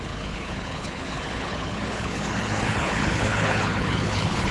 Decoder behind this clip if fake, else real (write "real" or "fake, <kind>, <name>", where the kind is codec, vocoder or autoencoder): fake, codec, HILCodec